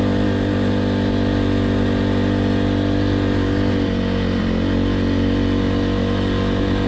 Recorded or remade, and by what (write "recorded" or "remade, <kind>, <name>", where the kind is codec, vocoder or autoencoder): recorded